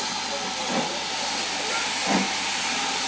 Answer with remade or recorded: recorded